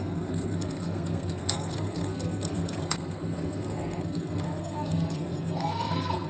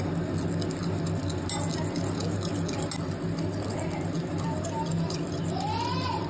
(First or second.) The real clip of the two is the second